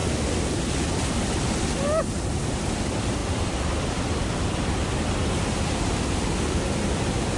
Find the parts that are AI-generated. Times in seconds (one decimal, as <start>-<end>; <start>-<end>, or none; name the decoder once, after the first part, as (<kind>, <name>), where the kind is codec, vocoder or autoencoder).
none